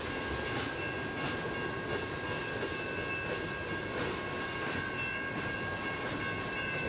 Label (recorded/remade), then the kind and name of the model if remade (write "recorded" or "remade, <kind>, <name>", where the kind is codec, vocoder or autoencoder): recorded